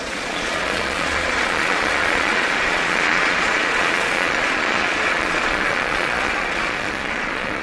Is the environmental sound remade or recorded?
remade